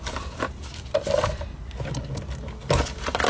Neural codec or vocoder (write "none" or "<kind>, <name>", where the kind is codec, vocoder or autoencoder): none